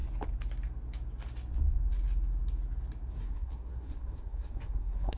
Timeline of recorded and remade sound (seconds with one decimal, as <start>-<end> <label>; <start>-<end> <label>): 0.0-3.1 recorded; 3.1-5.2 remade